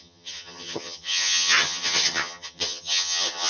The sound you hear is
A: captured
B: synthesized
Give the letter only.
B